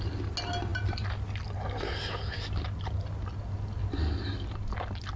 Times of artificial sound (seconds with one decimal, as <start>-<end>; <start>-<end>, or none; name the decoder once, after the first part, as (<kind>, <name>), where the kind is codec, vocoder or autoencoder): none